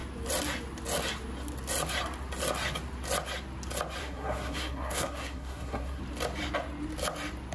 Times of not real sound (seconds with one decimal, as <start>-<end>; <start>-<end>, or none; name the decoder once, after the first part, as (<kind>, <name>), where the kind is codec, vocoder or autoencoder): 4.0-6.0 (codec, SNAC)